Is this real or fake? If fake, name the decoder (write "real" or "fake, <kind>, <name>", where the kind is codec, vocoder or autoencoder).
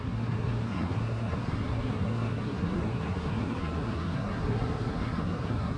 fake, codec, SNAC